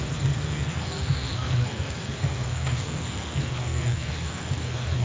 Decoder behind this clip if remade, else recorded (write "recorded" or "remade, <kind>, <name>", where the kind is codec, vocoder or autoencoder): remade, codec, SNAC